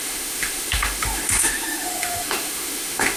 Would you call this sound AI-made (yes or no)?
yes